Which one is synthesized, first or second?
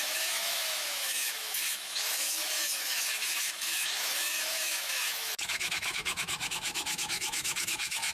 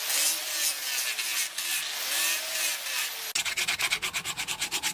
first